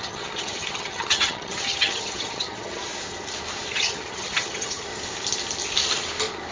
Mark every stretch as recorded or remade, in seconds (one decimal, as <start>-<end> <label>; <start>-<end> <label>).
0.0-2.8 remade; 2.8-3.7 recorded; 3.7-4.9 remade; 4.9-6.5 recorded